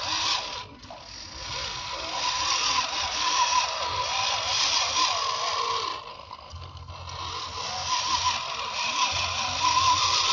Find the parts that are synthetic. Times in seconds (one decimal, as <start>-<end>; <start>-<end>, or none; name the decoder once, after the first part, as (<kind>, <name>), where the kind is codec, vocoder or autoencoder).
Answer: 6.1-6.9 (codec, SNAC)